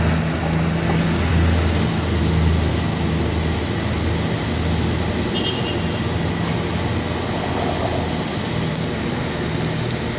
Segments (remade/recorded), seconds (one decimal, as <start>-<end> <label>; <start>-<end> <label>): 0.0-10.2 recorded